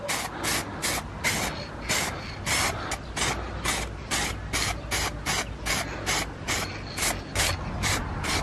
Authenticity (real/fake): real